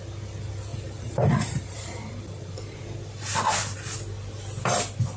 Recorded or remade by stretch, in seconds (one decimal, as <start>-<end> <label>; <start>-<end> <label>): 0.0-0.7 recorded; 0.7-2.8 remade; 2.8-5.2 recorded